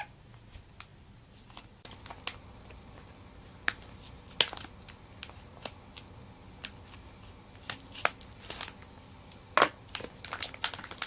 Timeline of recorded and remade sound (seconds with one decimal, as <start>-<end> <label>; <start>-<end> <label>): 0.0-11.1 recorded